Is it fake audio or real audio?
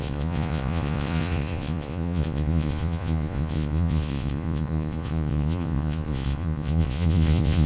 fake